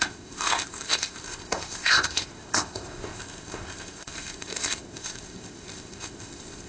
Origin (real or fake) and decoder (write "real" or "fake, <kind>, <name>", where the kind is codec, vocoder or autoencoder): fake, codec, ZipCodec